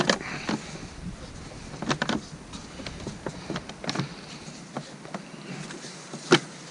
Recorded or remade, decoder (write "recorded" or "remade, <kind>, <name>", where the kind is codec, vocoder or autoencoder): recorded